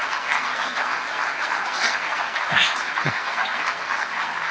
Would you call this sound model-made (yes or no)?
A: yes